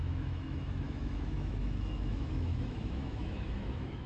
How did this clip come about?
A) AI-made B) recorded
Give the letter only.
A